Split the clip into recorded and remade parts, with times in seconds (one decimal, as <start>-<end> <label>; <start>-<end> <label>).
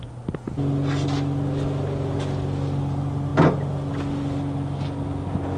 0.0-5.6 recorded